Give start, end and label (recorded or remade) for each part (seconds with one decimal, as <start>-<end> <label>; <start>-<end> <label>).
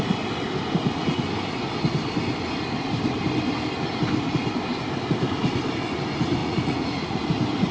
0.0-6.4 recorded; 6.4-7.2 remade; 7.2-7.7 recorded